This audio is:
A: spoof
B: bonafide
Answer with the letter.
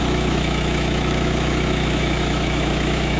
A